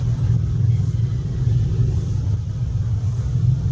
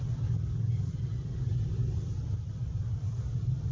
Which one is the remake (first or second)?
second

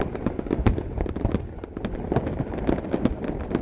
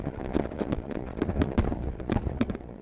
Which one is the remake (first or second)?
second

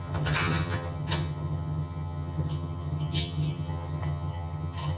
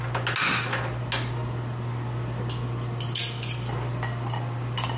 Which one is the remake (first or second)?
first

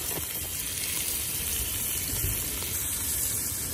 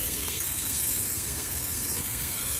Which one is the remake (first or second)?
second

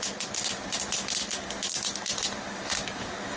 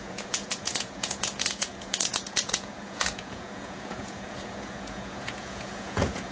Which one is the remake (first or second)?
second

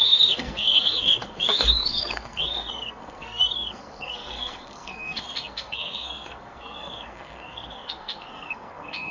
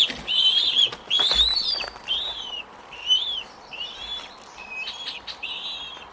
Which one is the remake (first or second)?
first